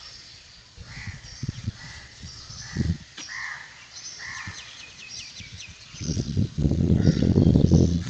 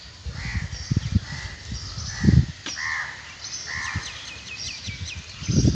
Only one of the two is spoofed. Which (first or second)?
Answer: first